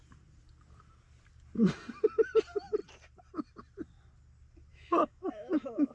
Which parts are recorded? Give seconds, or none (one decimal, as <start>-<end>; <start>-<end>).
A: 0.0-4.7